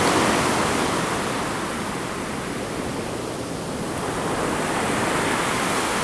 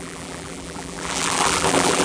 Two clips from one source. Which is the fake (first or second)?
second